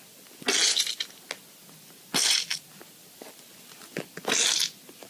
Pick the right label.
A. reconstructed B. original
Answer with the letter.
B